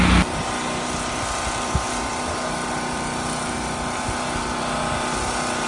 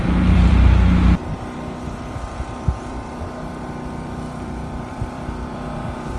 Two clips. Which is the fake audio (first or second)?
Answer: second